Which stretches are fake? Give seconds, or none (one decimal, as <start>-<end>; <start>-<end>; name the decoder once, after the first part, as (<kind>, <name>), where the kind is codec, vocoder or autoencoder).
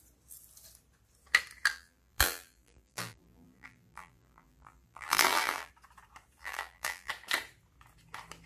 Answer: 1.7-5.7 (vocoder, BigVGAN v2); 6.4-7.1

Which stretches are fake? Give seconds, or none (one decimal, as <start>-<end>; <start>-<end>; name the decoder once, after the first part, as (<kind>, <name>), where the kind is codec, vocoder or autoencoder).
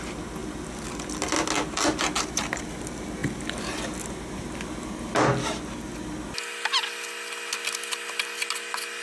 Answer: none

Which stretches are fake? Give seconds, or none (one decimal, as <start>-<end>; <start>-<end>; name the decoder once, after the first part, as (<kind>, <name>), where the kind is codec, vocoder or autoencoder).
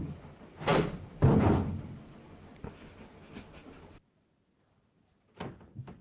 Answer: 0.7-4.2 (vocoder, BigVGAN v2)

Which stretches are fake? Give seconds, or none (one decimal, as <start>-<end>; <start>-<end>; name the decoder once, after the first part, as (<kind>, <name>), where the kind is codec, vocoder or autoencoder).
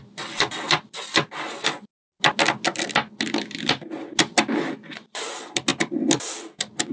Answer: none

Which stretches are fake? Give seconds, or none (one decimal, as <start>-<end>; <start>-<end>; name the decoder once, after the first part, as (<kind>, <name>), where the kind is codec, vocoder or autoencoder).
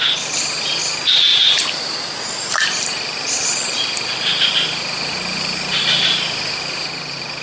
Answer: 0.0-7.4 (vocoder, BigVGAN v2)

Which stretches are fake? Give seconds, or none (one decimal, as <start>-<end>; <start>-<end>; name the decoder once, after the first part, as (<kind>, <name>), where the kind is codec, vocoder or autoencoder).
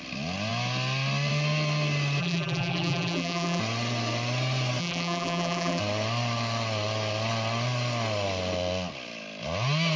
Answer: 2.2-3.6 (vocoder, BigVGAN v2); 4.8-5.8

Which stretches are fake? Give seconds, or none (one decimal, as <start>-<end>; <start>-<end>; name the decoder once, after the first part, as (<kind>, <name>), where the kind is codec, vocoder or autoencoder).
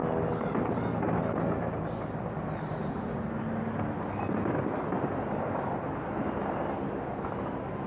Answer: none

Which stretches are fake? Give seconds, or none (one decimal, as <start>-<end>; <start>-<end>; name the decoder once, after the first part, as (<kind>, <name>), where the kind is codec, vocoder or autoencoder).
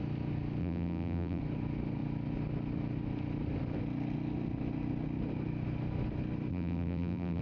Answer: 0.6-1.4 (vocoder, BigVGAN v2); 6.5-7.4